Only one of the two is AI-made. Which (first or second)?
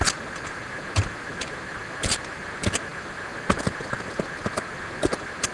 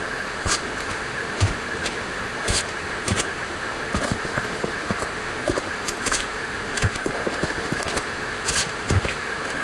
second